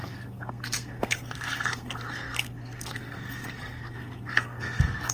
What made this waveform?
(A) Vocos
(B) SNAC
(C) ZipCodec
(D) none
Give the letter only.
B